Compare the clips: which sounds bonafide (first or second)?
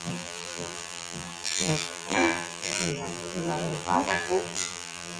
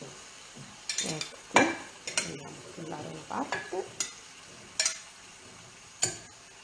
second